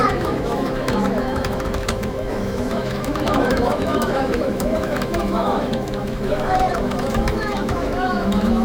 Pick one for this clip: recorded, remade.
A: remade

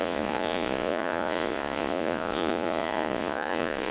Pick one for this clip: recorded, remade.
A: remade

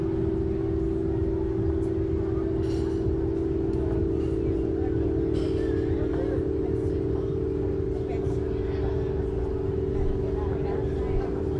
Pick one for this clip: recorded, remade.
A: recorded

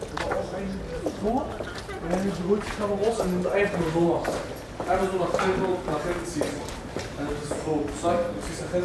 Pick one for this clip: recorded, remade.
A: recorded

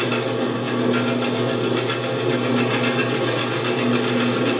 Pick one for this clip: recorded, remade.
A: recorded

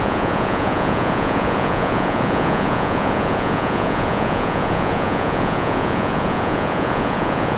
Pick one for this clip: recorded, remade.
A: remade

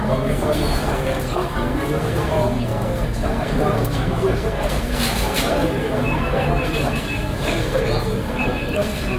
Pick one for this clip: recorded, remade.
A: remade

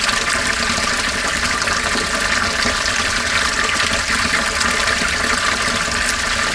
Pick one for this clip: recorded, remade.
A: recorded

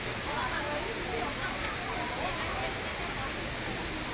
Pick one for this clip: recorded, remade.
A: recorded